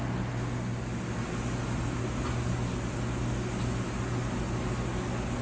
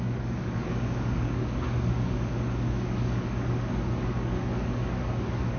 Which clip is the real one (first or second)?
first